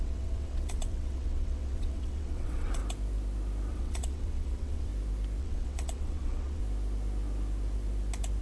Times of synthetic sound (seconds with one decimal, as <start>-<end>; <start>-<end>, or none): 0.0-2.8; 3.7-4.9; 5.4-6.6